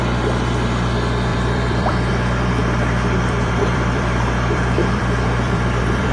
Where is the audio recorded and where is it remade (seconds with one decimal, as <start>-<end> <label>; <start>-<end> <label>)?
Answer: 0.0-1.3 recorded; 1.3-2.1 remade; 2.1-2.6 recorded; 2.6-6.1 remade